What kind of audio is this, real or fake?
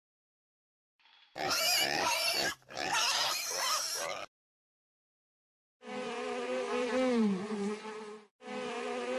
fake